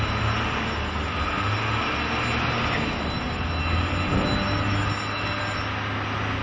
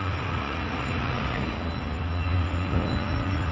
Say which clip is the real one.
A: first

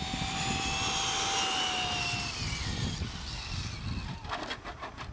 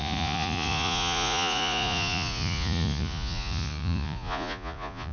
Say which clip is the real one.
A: first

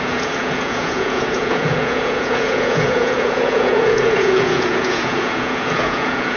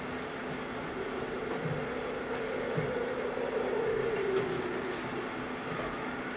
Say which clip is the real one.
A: second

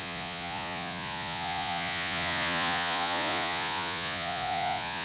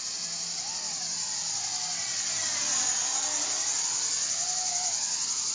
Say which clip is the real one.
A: second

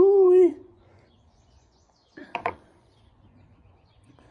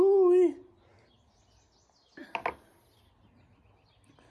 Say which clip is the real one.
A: second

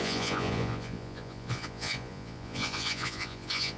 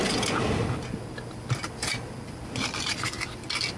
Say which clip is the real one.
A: second